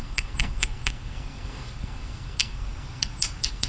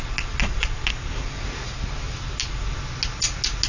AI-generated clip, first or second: first